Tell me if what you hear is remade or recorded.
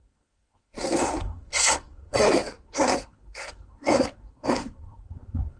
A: remade